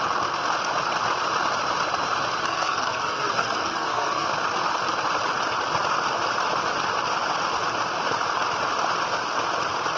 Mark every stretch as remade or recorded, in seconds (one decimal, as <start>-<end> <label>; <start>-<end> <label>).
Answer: 0.0-2.4 recorded; 2.4-4.3 remade; 4.3-10.0 recorded